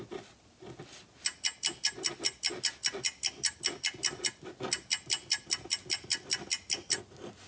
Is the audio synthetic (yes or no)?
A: no